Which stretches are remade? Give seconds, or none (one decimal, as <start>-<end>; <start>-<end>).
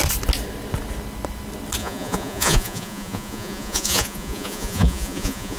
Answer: 1.8-5.6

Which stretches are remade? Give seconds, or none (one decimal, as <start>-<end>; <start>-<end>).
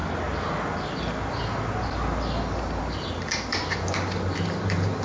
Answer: none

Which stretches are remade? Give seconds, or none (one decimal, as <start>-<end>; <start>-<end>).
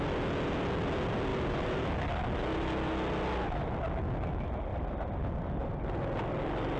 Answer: 1.3-1.9; 4.7-5.6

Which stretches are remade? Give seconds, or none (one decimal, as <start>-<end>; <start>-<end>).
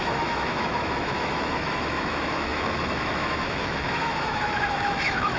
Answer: 0.0-5.4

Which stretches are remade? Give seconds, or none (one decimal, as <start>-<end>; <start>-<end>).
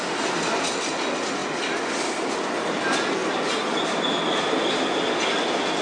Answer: none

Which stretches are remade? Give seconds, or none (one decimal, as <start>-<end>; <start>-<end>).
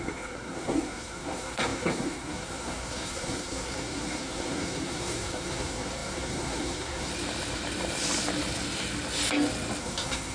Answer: 0.0-7.1; 9.8-10.3